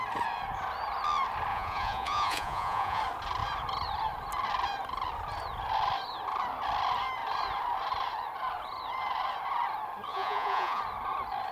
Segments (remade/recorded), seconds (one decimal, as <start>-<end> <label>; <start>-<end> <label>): 0.0-1.5 recorded; 1.5-3.0 remade; 3.0-10.1 recorded; 10.1-10.8 remade; 10.8-11.5 recorded